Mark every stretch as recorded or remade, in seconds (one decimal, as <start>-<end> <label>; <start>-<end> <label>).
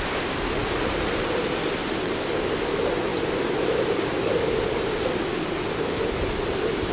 0.0-6.9 recorded